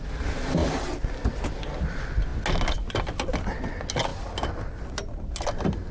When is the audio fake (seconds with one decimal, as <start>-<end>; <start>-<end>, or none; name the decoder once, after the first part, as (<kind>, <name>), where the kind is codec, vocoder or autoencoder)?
none